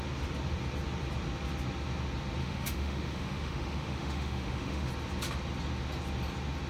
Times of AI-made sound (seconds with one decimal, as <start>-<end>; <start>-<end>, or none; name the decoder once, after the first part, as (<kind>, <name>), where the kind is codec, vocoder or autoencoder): 2.4-4.9 (autoencoder, DAC-VAE)

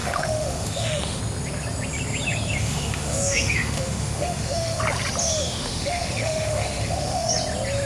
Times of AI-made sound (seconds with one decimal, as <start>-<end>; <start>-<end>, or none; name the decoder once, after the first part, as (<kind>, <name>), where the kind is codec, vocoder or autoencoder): 0.0-1.2 (autoencoder, DAC-VAE); 2.6-4.8; 5.2-7.3

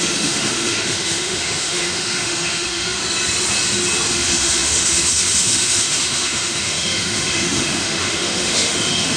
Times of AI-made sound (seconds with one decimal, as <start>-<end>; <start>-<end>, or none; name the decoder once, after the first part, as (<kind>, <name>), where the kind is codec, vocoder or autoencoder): 0.0-3.0 (autoencoder, DAC-VAE); 4.1-9.2

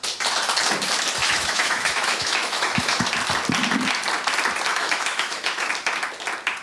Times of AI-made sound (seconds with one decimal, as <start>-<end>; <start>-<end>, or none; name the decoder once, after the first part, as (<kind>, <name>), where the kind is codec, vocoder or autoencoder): 1.2-3.1 (autoencoder, DAC-VAE); 4.7-5.7

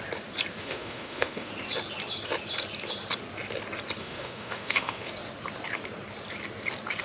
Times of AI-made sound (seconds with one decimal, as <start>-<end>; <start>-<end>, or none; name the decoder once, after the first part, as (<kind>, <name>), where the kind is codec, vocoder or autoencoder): 0.6-1.5 (autoencoder, DAC-VAE); 4.0-5.1

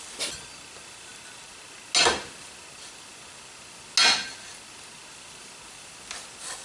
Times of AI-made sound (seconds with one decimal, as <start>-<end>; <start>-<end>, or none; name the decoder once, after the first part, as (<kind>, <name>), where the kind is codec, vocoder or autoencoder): none

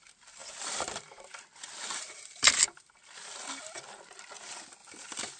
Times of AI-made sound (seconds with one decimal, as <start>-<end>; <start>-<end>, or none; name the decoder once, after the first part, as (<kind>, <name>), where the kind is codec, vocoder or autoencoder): none

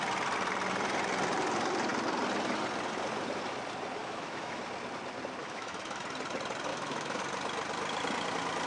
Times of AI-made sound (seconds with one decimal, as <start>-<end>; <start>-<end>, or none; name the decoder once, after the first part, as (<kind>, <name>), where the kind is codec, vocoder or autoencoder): 4.0-4.6 (autoencoder, DAC-VAE); 5.4-6.0; 6.7-7.2